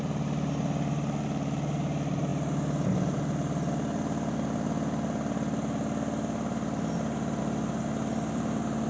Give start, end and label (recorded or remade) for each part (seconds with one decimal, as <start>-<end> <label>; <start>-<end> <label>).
0.0-8.9 recorded